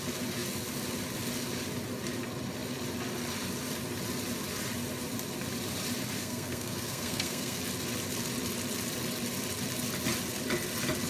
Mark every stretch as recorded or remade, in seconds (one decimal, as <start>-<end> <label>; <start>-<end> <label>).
0.0-6.2 recorded; 6.2-7.6 remade; 7.6-11.1 recorded